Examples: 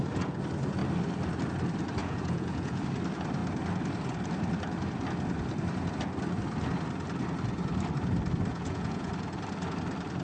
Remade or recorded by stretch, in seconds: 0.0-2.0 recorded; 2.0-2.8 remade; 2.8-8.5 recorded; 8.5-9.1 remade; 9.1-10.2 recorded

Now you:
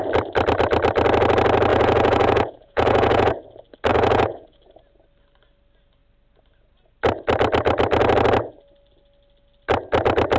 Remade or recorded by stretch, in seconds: 0.0-1.7 recorded; 1.7-3.3 remade; 3.3-3.9 recorded; 3.9-4.6 remade; 4.6-10.4 recorded

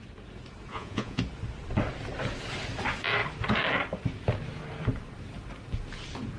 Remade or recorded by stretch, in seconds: 0.0-0.7 recorded; 0.7-1.2 remade; 1.2-6.4 recorded

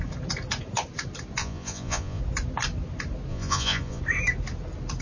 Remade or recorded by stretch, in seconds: 0.0-1.4 recorded; 1.4-2.2 remade; 2.2-3.3 recorded; 3.3-4.0 remade; 4.0-5.0 recorded